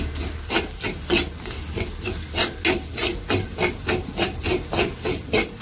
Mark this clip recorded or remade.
recorded